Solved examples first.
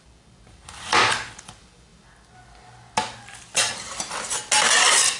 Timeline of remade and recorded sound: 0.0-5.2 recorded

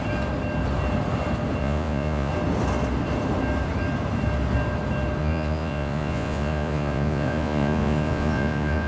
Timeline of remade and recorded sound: 0.0-1.6 recorded; 1.6-2.3 remade; 2.3-5.2 recorded; 5.2-8.9 remade

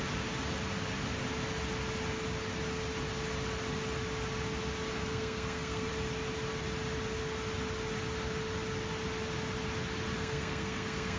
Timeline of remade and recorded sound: 0.0-5.0 recorded; 5.0-5.9 remade; 5.9-10.2 recorded; 10.2-11.2 remade

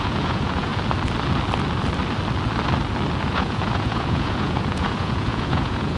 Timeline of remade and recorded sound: 0.0-0.7 remade; 0.7-3.2 recorded; 3.2-6.0 remade